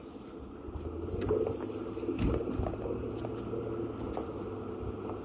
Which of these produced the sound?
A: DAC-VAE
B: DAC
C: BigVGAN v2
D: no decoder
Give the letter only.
D